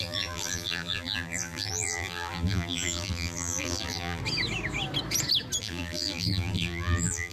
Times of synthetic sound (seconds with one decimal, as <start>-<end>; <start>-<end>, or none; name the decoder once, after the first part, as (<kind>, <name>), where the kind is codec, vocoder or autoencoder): 0.0-4.2 (vocoder, BigVGAN v2); 5.6-7.3